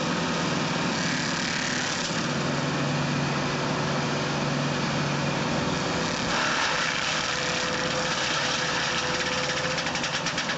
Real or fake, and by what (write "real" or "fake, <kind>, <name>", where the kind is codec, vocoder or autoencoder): real